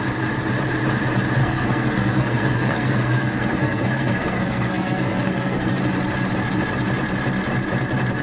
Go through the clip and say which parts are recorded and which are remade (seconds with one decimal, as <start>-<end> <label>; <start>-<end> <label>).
0.0-1.4 recorded; 1.4-5.8 remade; 5.8-8.2 recorded